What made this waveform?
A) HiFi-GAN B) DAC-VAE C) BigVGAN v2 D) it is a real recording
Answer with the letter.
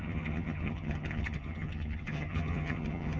A